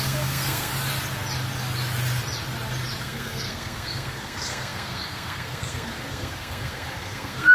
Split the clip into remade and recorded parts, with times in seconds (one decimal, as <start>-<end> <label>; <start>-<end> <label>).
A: 0.0-0.7 remade; 0.7-3.0 recorded; 3.0-7.5 remade